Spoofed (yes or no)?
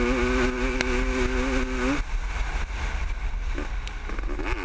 no